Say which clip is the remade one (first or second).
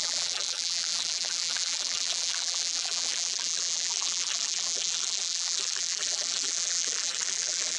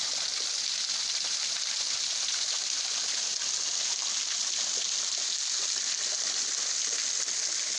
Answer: first